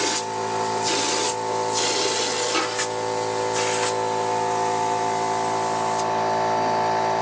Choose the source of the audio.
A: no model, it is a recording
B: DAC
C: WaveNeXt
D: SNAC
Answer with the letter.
A